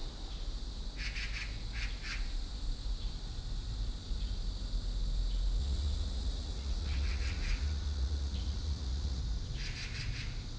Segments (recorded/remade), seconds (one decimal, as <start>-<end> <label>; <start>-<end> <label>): 0.0-5.6 recorded; 5.6-9.2 remade; 9.2-10.6 recorded